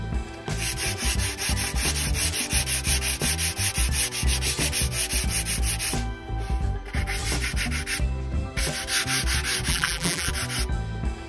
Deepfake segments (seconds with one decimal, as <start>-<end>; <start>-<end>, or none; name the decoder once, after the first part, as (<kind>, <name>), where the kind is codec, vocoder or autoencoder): 9.7-10.3 (vocoder, BigVGAN v2)